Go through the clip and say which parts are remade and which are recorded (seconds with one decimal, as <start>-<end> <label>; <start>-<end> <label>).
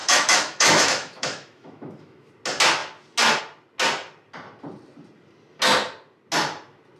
0.0-2.3 remade; 2.3-7.0 recorded